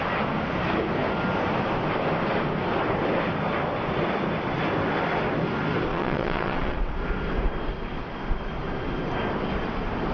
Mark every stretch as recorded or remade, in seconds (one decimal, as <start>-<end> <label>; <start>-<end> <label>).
0.0-5.9 recorded; 5.9-6.9 remade; 6.9-10.1 recorded